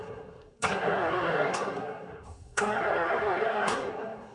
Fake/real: fake